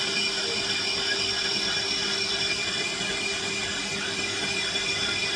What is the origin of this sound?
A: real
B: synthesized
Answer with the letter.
A